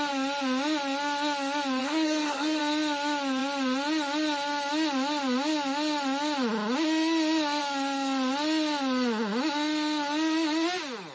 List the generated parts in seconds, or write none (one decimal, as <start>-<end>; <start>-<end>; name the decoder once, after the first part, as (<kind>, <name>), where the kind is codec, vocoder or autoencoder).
1.8-2.6 (codec, SNAC)